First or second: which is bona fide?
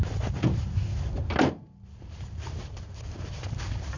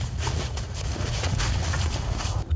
first